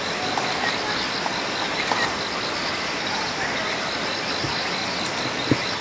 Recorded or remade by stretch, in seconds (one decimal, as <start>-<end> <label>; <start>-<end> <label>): 0.0-5.8 recorded